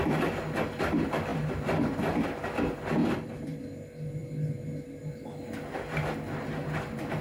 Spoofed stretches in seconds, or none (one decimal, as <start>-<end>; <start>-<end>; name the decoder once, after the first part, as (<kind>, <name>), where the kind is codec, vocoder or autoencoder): 3.0-3.6 (vocoder, BigVGAN v2)